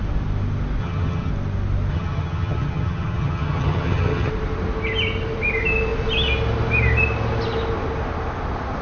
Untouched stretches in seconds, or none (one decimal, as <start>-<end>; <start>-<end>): 0.0-0.8; 1.3-1.9; 4.3-8.8